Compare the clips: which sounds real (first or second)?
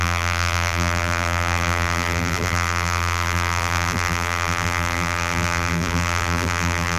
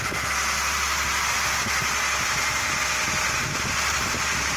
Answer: second